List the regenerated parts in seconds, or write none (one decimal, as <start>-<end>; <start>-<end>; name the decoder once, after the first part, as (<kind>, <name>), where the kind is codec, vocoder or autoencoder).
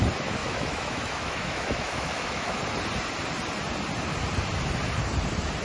0.4-2.6 (autoencoder, DAC-VAE)